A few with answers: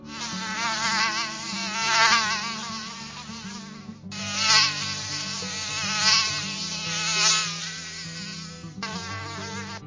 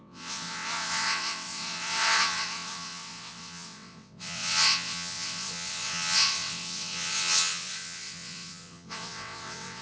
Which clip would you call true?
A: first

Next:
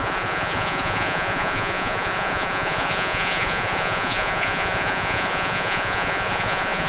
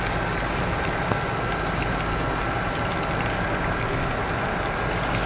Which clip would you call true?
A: second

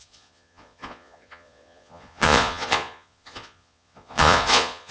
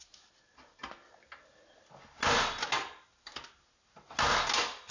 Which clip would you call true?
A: second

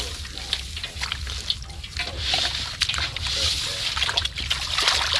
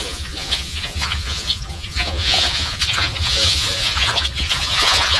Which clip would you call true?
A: first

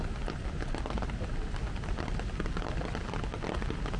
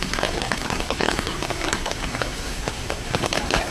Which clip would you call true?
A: first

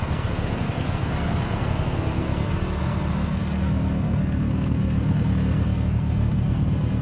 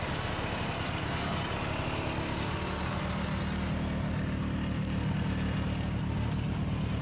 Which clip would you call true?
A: second